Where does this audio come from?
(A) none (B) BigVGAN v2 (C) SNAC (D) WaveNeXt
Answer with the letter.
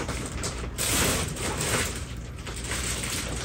B